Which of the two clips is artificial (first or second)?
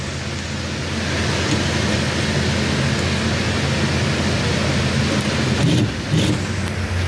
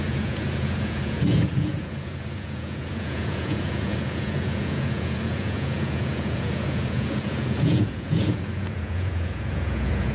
second